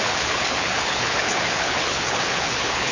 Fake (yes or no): yes